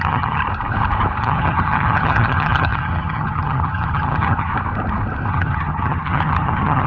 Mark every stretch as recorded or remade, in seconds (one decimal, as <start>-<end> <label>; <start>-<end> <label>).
0.0-0.4 remade; 0.4-1.2 recorded; 1.2-4.5 remade; 4.5-5.3 recorded; 5.3-6.9 remade